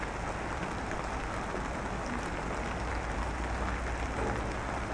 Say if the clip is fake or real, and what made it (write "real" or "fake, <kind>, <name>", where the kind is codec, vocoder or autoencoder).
real